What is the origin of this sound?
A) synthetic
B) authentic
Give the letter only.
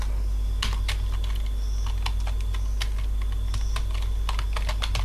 B